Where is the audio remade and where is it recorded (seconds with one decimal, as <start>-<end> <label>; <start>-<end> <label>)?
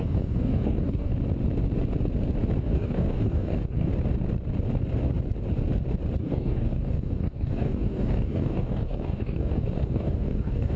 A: 0.0-1.1 remade; 1.1-2.6 recorded; 2.6-3.9 remade; 3.9-6.2 recorded; 6.2-10.8 remade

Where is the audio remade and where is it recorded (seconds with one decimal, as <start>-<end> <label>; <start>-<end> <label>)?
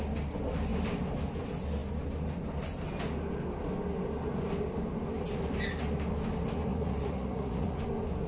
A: 0.0-6.7 recorded; 6.7-7.8 remade; 7.8-8.3 recorded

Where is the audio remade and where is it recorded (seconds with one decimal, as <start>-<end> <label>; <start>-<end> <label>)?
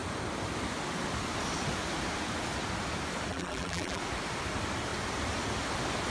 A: 0.0-3.3 recorded; 3.3-4.0 remade; 4.0-6.1 recorded